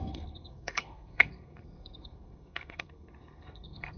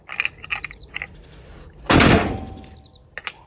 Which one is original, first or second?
second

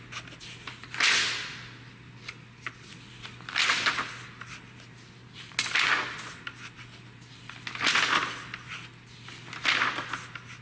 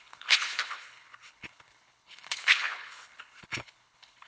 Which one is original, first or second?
first